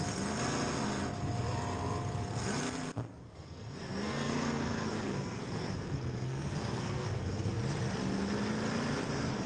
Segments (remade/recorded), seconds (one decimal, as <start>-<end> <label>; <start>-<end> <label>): 0.0-3.1 recorded; 3.1-7.5 remade; 7.5-9.5 recorded